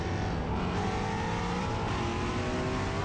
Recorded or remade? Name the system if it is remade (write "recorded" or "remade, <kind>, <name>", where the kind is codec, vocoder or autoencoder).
recorded